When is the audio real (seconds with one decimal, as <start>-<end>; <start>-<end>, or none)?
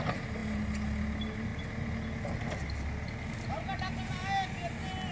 0.0-5.1